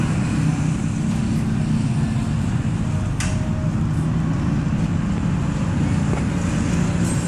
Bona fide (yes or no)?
yes